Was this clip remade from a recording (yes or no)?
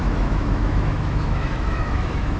yes